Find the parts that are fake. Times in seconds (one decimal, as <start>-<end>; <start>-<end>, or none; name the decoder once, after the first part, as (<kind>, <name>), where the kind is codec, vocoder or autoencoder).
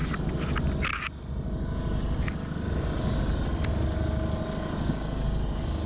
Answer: none